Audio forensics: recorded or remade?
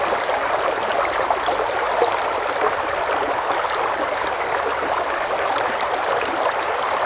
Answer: recorded